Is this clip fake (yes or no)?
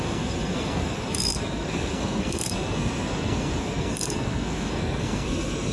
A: yes